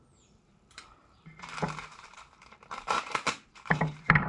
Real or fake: fake